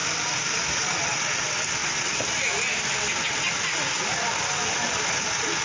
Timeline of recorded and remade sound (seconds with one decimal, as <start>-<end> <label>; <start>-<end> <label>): 0.0-1.4 remade; 1.4-1.8 recorded; 1.8-4.8 remade; 4.8-5.6 recorded